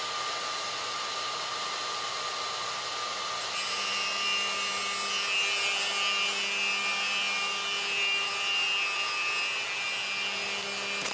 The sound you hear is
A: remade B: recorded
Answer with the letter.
B